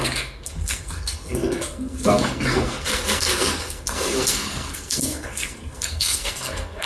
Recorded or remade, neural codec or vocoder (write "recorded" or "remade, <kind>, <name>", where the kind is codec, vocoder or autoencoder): remade, codec, SNAC